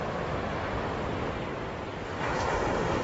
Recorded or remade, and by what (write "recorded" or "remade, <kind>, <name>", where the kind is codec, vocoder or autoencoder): recorded